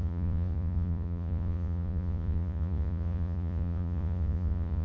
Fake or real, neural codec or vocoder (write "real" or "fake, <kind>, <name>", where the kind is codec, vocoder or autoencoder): fake, vocoder, Vocos